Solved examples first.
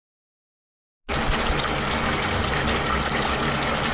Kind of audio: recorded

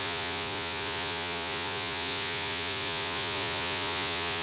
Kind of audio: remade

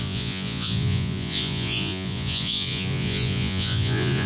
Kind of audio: remade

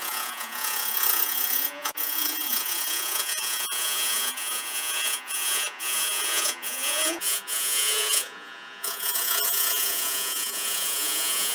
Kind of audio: remade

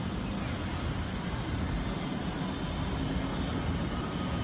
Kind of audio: recorded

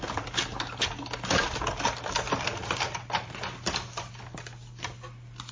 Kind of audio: recorded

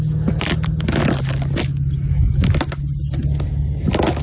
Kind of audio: recorded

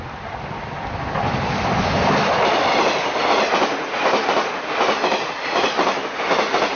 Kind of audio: recorded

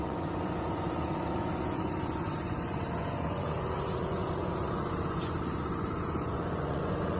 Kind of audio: remade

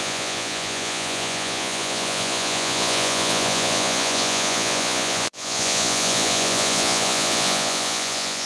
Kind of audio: remade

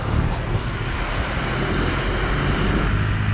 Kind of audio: recorded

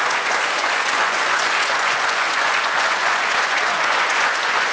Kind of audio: remade